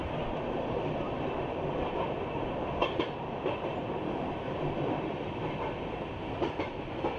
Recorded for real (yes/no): yes